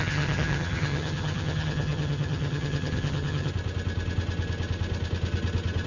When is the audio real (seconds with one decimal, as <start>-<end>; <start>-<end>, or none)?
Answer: 3.5-5.9